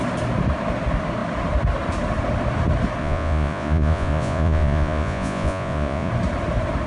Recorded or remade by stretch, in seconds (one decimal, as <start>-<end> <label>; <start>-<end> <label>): 0.0-3.0 recorded; 3.0-6.1 remade; 6.1-6.9 recorded